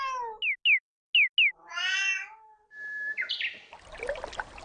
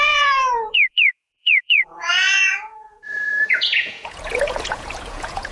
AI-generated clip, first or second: second